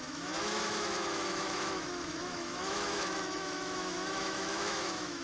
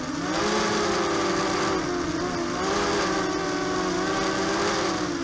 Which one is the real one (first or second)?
second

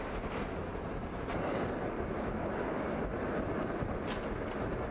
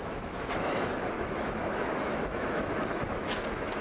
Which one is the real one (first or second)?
first